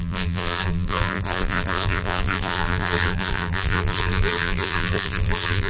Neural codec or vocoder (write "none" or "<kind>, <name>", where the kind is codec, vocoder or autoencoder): vocoder, BigVGAN v2